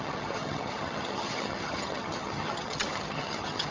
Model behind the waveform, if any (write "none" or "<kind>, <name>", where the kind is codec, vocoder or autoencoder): vocoder, HiFi-GAN